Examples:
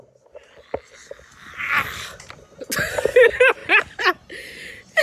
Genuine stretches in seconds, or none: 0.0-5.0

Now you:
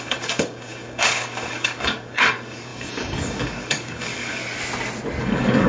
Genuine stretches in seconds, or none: 4.4-5.2

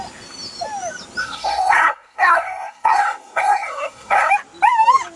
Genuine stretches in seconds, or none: 0.0-1.2; 4.3-5.2

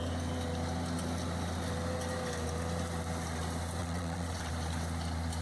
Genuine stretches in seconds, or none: 0.0-3.8; 4.5-5.4

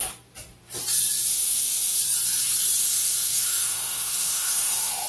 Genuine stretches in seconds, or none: 0.0-1.3; 2.0-2.8

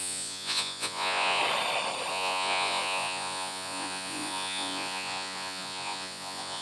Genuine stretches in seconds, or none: 1.4-2.1

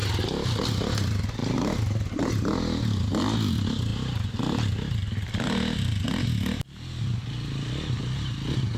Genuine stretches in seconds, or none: 0.0-8.8

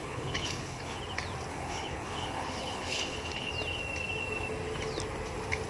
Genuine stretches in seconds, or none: 1.0-1.5; 3.5-5.7